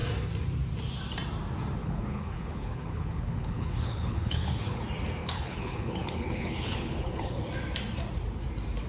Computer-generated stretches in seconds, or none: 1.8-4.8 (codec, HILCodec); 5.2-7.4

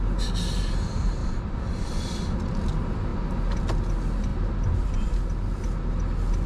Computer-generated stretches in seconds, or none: 1.2-2.2 (vocoder, BigVGAN v2)

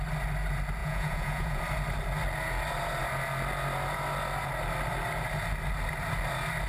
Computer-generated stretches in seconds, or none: 0.8-1.6 (vocoder, Vocos)

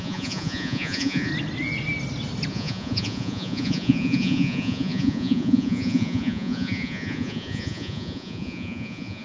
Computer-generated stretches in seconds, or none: 0.0-1.3 (vocoder, Vocos); 2.5-9.2

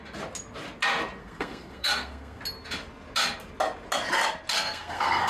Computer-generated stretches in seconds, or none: 1.2-2.4 (codec, SNAC); 4.5-5.3

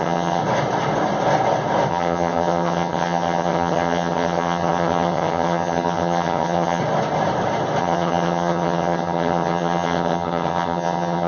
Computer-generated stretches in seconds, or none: 0.0-0.4 (vocoder, HiFi-GAN); 1.9-6.8; 7.8-11.3

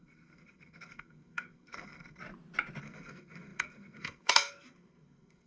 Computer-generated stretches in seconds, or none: 0.0-2.2 (codec, SNAC); 2.8-5.5